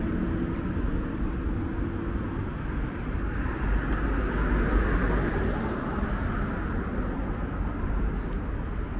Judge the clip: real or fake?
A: real